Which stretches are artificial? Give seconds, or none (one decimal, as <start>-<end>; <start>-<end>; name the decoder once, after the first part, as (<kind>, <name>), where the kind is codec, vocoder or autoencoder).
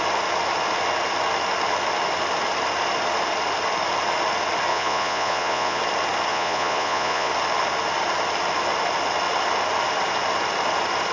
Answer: 4.7-5.8 (vocoder, Vocos); 6.3-7.3